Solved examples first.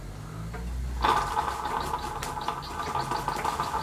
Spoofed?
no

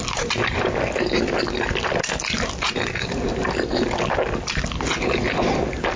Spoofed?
no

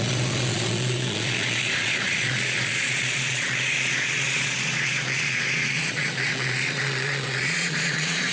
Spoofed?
yes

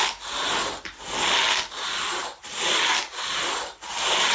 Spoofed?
no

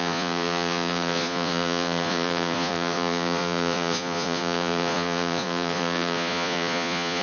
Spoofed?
yes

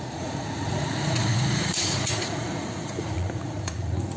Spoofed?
yes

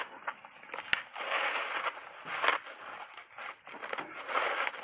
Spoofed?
no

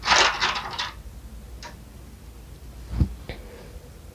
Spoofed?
no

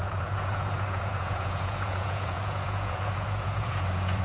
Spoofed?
yes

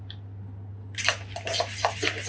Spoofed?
no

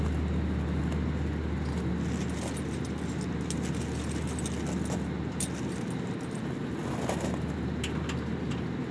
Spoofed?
no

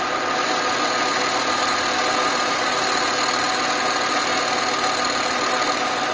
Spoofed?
no